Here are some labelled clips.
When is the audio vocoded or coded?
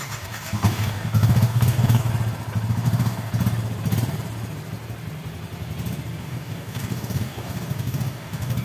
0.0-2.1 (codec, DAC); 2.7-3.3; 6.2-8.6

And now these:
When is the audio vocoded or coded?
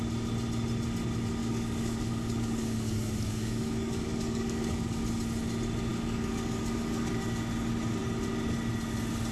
1.4-5.0 (codec, DAC); 5.9-7.1